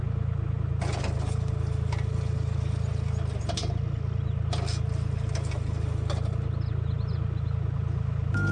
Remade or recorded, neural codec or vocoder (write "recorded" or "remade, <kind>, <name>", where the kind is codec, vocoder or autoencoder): recorded